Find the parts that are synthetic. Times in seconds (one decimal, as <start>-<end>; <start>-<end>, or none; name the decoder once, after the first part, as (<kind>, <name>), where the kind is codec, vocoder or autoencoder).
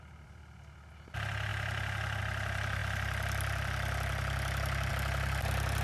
none